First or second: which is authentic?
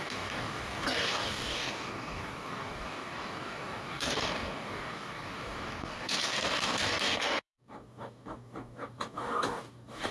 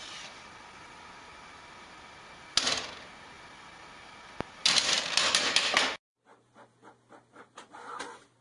second